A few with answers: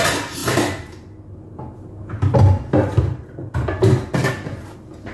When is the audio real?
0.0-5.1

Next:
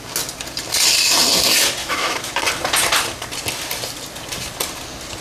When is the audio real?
0.0-1.8; 2.3-5.2